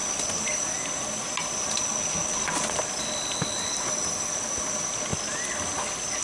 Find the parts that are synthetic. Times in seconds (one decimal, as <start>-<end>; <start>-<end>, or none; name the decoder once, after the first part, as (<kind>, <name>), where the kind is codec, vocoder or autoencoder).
none

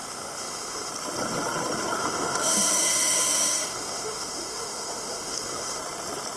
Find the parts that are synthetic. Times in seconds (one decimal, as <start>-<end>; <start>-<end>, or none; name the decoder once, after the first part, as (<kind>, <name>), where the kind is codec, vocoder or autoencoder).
0.0-0.9 (autoencoder, DAC-VAE); 2.0-5.8